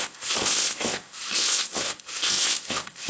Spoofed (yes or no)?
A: yes